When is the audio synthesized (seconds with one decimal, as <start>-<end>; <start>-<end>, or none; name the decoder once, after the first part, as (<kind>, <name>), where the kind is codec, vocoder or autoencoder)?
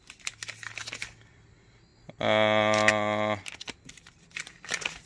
none